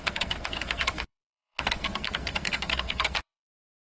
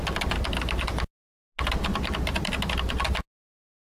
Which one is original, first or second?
second